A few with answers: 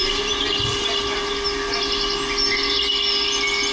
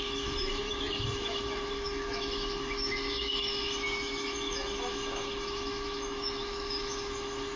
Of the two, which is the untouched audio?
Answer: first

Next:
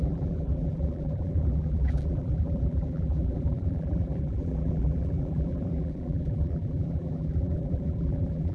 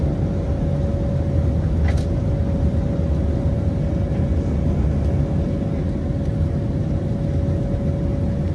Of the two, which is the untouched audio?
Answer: second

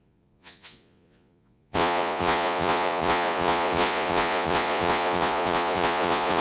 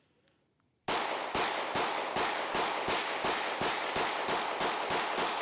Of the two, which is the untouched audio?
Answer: second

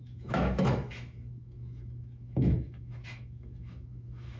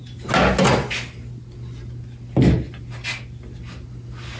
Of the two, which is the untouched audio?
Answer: second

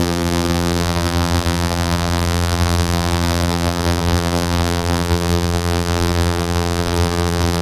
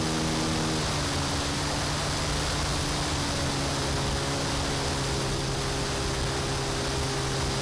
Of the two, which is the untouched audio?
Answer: second